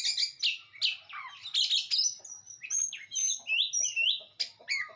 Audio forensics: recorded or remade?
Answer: recorded